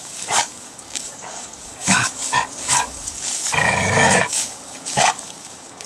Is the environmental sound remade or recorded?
remade